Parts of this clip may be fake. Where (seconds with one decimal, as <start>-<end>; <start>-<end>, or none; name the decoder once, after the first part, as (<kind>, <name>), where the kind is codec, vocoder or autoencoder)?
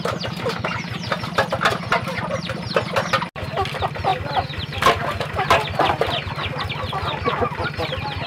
none